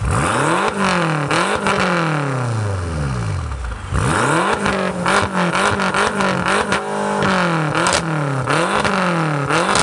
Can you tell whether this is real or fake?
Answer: real